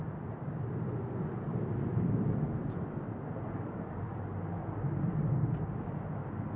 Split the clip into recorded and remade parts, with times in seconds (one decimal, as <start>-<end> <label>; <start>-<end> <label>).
0.0-4.6 remade; 4.6-6.6 recorded

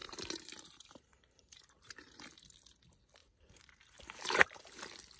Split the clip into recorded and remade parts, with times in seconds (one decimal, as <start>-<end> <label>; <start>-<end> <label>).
0.0-2.2 remade; 2.2-3.2 recorded; 3.2-4.8 remade; 4.8-5.2 recorded

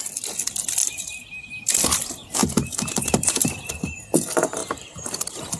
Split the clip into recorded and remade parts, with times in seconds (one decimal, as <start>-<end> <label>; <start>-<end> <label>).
0.0-0.8 recorded; 0.8-1.5 remade; 1.5-2.4 recorded; 2.4-3.5 remade; 3.5-4.6 recorded; 4.6-5.6 remade

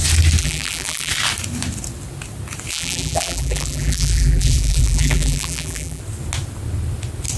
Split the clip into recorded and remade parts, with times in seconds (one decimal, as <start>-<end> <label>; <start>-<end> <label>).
0.0-0.4 recorded; 0.4-1.1 remade; 1.1-2.7 recorded; 2.7-6.0 remade; 6.0-7.4 recorded

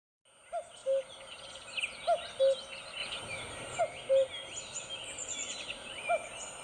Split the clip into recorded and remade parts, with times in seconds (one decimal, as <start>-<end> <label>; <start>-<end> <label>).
0.0-6.6 recorded

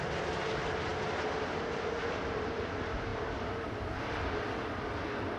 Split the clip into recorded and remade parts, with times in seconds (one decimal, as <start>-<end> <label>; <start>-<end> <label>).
0.0-5.4 recorded